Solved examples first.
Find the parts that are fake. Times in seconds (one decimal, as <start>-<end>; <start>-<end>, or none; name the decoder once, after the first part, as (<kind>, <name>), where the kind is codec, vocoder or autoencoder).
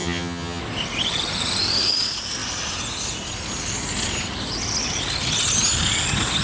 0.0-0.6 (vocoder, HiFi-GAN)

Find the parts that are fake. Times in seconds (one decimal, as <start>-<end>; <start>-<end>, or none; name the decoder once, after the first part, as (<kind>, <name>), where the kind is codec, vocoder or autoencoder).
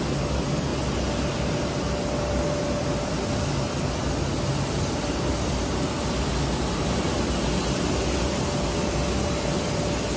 none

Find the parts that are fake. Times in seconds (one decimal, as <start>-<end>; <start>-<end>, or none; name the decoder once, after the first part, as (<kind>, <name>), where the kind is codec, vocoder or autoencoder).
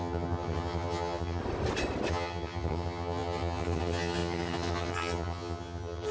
0.0-1.4 (vocoder, HiFi-GAN); 2.1-6.1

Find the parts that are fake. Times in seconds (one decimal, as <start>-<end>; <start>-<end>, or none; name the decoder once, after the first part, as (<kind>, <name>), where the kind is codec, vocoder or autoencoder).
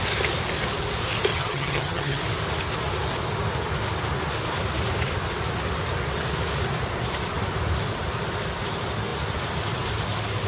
1.3-2.2 (vocoder, HiFi-GAN)